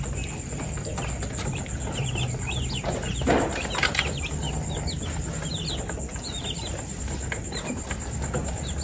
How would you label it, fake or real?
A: real